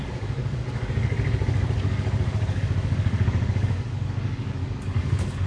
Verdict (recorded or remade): remade